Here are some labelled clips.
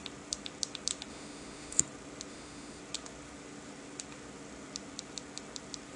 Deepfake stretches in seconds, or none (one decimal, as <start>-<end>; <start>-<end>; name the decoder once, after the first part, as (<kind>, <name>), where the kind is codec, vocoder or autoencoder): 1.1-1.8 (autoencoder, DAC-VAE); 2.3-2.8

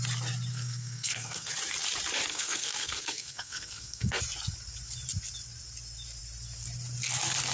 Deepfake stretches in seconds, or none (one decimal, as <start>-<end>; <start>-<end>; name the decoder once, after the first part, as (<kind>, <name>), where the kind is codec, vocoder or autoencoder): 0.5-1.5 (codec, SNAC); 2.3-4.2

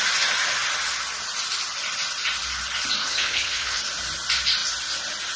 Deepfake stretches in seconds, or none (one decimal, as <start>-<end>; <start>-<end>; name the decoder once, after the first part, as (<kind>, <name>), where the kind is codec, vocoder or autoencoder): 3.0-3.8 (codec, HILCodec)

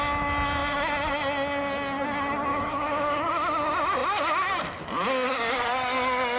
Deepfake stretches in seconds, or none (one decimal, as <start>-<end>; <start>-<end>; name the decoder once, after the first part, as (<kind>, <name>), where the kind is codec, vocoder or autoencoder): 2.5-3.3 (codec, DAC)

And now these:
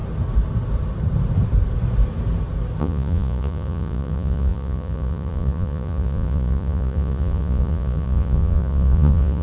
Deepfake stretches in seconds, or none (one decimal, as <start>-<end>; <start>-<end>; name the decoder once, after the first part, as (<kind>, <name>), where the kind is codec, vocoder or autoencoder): 2.8-9.4 (vocoder, Vocos)